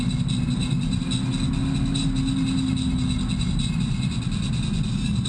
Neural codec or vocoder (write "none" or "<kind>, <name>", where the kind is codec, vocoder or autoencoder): none